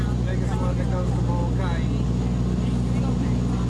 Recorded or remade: recorded